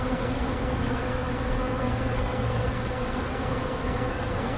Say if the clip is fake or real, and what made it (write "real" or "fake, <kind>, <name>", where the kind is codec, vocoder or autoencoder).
fake, codec, SNAC